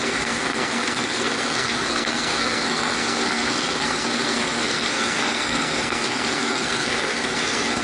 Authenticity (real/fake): fake